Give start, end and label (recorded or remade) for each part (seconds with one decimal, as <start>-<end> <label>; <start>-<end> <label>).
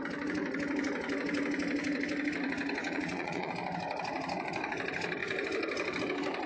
0.0-2.8 recorded; 2.8-3.5 remade; 3.5-6.5 recorded